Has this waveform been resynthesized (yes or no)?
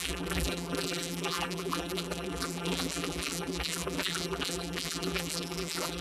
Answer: yes